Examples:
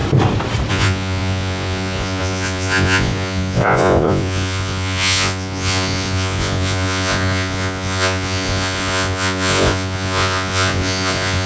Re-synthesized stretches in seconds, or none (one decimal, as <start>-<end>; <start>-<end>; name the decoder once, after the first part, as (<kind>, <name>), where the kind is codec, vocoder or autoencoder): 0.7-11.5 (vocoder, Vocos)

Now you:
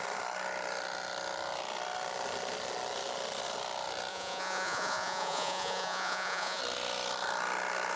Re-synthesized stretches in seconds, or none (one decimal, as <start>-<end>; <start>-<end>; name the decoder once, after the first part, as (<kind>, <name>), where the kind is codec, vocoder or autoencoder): 4.1-6.6 (vocoder, Vocos)

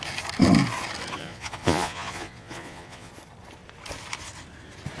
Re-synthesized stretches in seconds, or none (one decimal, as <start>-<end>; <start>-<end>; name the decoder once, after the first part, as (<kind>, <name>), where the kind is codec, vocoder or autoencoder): 1.2-3.1 (vocoder, Vocos)

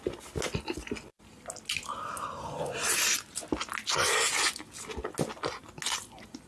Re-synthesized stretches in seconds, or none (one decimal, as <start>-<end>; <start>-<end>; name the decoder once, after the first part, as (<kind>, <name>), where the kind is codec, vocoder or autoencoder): none

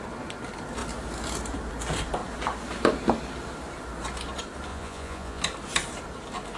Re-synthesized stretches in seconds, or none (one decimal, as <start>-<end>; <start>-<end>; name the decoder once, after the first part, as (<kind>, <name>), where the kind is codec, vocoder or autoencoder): 4.7-5.4 (vocoder, Vocos)

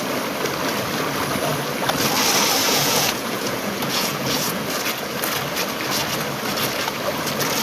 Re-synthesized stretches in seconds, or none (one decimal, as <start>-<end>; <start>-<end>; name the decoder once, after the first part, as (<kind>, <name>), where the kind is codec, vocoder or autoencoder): 2.6-4.6 (vocoder, Vocos)

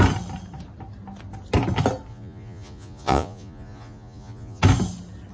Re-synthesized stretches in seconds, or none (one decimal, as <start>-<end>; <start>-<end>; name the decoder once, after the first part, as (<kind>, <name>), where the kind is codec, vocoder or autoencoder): 2.1-4.6 (vocoder, Vocos)